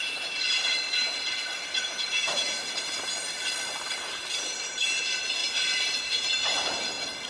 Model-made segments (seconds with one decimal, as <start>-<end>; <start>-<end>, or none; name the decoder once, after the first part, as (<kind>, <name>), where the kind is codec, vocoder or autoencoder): 0.5-7.3 (vocoder, BigVGAN v2)